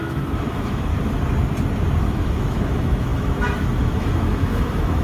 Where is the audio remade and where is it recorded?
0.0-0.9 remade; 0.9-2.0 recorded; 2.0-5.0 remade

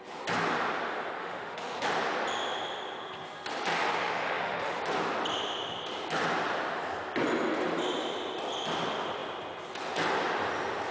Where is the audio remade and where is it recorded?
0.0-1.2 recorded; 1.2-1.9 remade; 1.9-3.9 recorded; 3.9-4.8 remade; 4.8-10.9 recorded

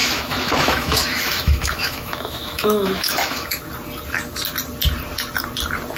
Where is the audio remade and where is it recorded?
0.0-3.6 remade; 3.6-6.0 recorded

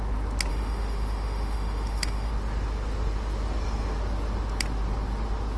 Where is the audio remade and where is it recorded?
0.0-0.5 recorded; 0.5-2.3 remade; 2.3-5.6 recorded

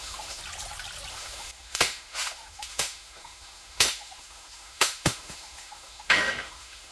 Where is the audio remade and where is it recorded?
0.0-0.4 remade; 0.4-1.1 recorded; 1.1-6.9 remade

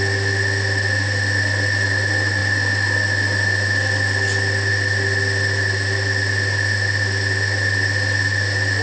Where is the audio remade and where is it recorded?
0.0-8.8 recorded

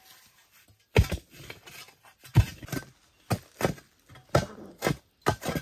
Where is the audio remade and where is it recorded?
0.0-5.6 recorded